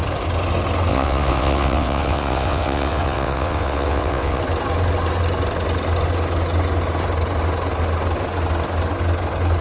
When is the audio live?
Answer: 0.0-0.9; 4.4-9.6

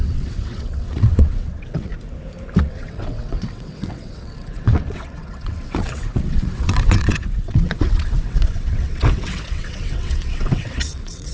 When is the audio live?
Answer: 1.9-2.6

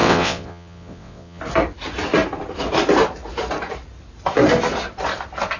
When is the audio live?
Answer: 1.4-5.6